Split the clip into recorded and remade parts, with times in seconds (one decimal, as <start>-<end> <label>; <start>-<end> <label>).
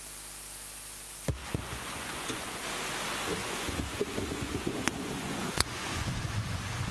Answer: 0.0-1.4 recorded; 1.4-2.6 remade; 2.6-3.4 recorded; 3.4-6.9 remade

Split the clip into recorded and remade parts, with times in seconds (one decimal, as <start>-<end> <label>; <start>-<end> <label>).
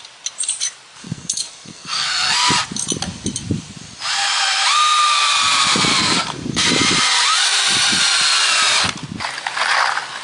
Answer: 0.0-1.0 recorded; 1.0-2.5 remade; 2.5-5.9 recorded; 5.9-6.7 remade; 6.7-10.2 recorded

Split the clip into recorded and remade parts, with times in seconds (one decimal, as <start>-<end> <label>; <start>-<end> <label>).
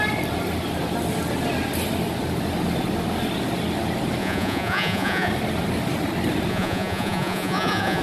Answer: 0.0-4.2 recorded; 4.2-5.3 remade; 5.3-6.5 recorded; 6.5-8.0 remade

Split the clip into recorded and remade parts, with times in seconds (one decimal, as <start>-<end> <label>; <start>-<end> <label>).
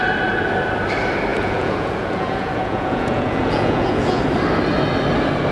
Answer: 0.0-1.3 recorded; 1.3-4.2 remade; 4.2-5.5 recorded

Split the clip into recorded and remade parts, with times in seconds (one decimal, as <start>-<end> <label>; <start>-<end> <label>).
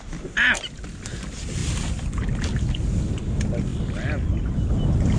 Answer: 0.0-5.2 recorded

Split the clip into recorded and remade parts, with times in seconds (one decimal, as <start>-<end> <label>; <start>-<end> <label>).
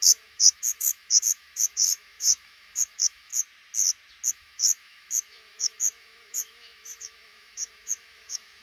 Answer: 0.0-3.3 remade; 3.3-4.3 recorded; 4.3-8.6 remade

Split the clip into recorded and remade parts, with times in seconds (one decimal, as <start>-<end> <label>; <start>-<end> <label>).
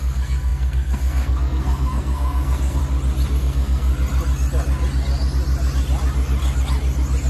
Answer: 0.0-2.8 remade; 2.8-3.4 recorded; 3.4-3.9 remade; 3.9-7.3 recorded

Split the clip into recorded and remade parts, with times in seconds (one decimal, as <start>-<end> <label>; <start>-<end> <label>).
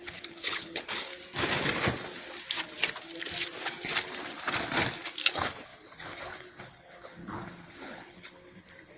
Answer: 0.0-1.1 remade; 1.1-5.3 recorded; 5.3-9.0 remade